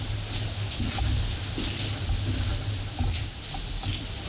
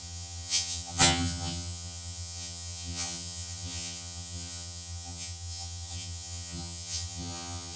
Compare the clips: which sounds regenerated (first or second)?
second